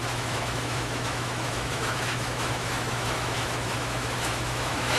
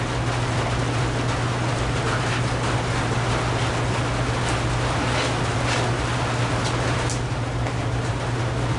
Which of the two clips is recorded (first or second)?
second